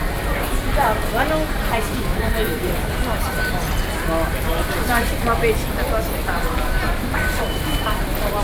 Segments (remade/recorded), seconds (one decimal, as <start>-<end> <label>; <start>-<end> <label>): 0.0-1.9 recorded; 1.9-2.7 remade; 2.7-8.4 recorded